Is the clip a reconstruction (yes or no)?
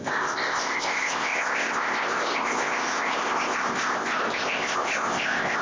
yes